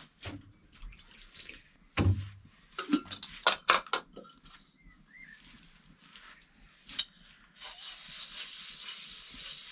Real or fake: real